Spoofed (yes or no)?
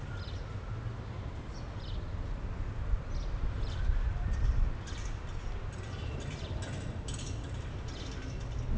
no